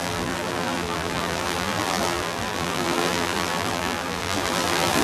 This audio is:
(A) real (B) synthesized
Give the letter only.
B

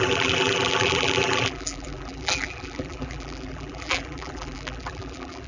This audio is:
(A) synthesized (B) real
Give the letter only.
A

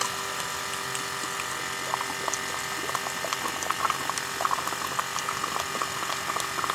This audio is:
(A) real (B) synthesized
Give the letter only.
A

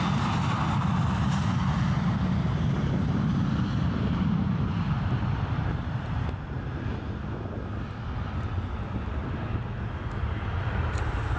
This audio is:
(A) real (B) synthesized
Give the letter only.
A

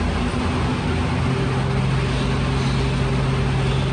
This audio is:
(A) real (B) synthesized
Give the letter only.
A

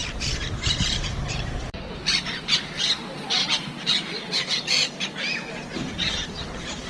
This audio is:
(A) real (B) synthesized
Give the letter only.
B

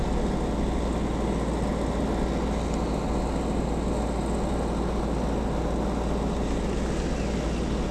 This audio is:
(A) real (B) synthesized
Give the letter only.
A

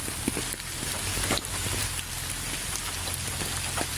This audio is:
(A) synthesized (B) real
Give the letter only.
B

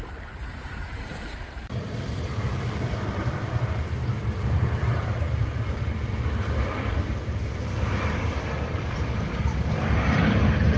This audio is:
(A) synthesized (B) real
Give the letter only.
A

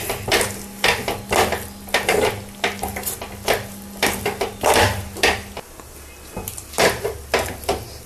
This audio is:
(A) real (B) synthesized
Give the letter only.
A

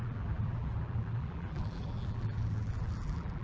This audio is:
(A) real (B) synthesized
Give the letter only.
B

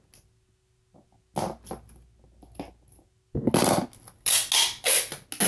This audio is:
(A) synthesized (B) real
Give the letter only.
B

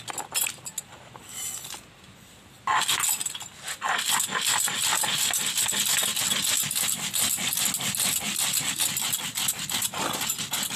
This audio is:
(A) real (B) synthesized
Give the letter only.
A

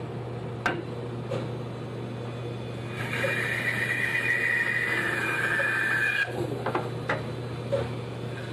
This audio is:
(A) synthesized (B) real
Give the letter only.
B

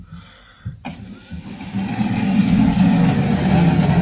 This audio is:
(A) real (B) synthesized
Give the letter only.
A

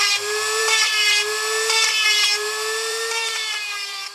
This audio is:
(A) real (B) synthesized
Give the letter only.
B